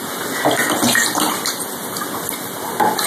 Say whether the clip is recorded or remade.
recorded